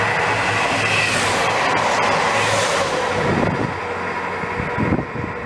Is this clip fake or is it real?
real